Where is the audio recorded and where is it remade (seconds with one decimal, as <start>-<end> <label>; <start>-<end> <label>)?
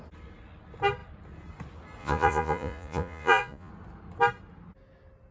0.0-2.0 recorded; 2.0-3.7 remade; 3.7-5.3 recorded